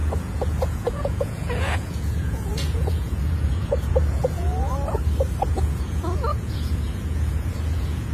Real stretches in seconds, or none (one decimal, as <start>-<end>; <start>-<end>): 4.5-5.5